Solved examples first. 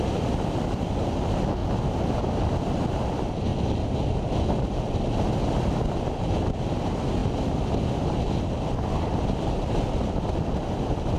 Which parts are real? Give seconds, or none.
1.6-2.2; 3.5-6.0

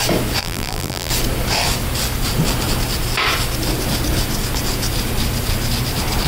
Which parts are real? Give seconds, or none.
0.0-0.4; 1.1-6.3